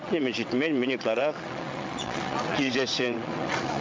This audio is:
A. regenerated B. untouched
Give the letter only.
A